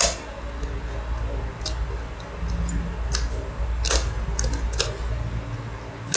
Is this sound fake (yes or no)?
no